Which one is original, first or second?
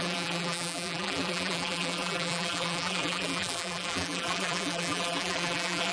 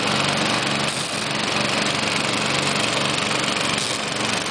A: second